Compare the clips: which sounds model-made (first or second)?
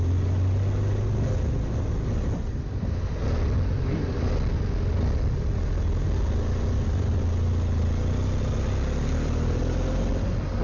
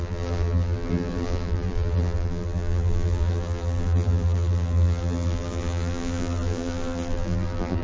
second